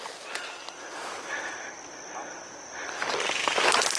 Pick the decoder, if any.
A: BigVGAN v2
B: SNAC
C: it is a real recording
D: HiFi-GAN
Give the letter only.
C